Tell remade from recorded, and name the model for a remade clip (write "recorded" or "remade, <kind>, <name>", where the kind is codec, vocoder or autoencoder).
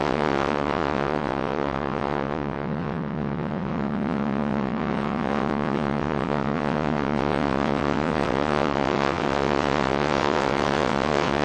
remade, vocoder, WaveNeXt